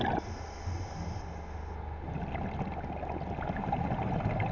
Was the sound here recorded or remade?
recorded